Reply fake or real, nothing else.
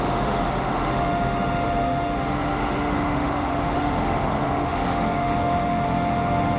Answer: fake